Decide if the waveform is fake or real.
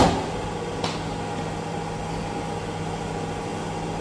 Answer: real